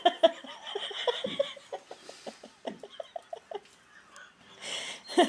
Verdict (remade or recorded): recorded